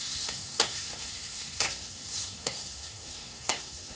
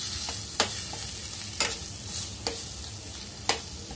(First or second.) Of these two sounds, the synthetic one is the first